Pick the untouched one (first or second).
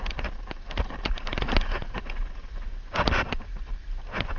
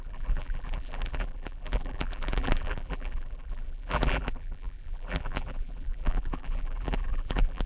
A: first